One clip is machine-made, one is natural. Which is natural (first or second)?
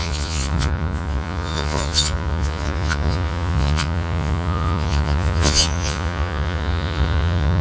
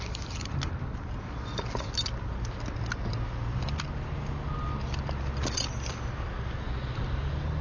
second